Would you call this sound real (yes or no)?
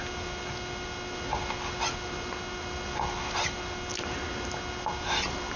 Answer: yes